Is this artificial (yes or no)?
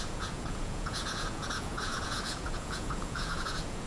yes